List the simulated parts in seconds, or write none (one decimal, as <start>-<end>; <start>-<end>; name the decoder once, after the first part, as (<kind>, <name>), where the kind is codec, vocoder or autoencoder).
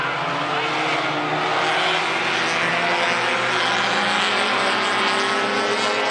none